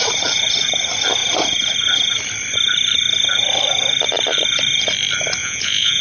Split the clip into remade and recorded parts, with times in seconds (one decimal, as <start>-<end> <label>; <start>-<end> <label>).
0.0-5.4 recorded; 5.4-6.0 remade